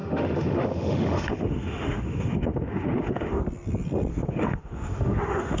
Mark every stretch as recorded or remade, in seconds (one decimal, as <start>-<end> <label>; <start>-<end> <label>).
0.0-3.4 remade; 3.4-4.1 recorded; 4.1-5.6 remade